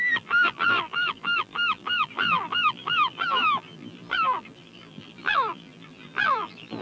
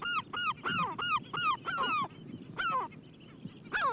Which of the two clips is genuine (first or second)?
second